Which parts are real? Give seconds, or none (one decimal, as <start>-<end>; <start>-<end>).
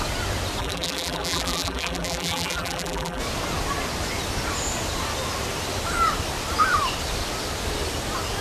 0.0-0.6; 3.2-8.4